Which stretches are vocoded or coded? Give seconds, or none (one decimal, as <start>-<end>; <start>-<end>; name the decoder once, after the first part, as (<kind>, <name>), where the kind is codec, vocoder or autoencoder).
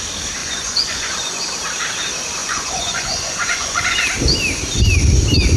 0.4-1.4 (vocoder, Vocos); 2.4-4.0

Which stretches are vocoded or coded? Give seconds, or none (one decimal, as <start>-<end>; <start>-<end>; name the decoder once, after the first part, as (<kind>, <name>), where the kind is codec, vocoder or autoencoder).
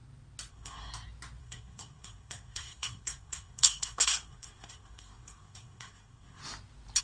0.5-0.9 (codec, SNAC); 1.4-6.4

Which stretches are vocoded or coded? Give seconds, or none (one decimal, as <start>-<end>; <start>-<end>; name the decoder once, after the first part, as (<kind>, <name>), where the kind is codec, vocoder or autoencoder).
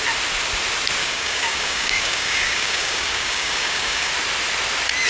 1.0-4.1 (codec, DAC)